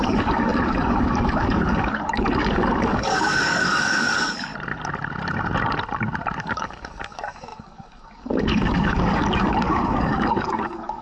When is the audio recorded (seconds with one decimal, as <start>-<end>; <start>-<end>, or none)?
4.5-6.4